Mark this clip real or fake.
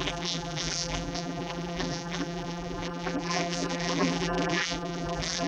fake